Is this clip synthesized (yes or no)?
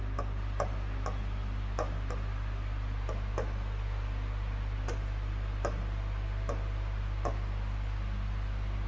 no